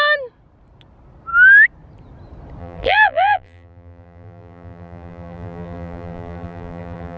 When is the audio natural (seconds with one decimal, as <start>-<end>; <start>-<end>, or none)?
0.0-2.6